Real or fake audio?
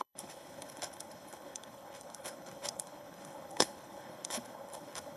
fake